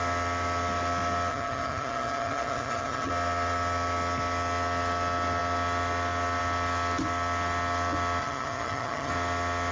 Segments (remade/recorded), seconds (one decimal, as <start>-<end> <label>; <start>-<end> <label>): 0.0-1.3 recorded; 1.3-3.1 remade; 3.1-8.2 recorded; 8.2-9.1 remade; 9.1-9.7 recorded